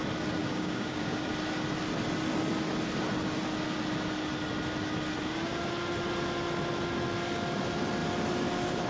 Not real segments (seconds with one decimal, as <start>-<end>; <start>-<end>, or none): 0.4-1.2